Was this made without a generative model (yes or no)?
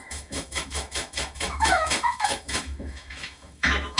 no